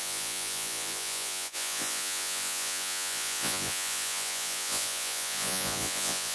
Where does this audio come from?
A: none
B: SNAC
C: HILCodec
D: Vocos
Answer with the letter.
D